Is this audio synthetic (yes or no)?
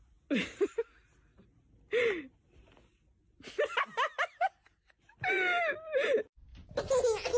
no